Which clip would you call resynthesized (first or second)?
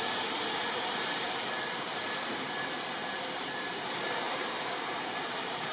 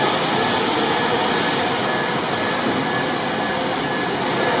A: first